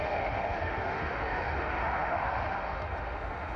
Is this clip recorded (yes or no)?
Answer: no